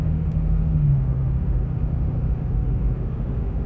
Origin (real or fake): fake